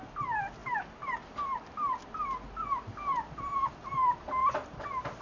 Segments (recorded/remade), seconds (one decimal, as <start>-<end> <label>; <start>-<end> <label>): 0.0-5.2 recorded